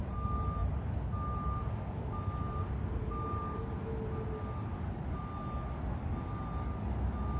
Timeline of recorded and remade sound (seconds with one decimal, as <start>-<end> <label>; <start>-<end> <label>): 0.0-7.4 recorded